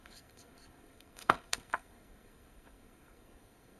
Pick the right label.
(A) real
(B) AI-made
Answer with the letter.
B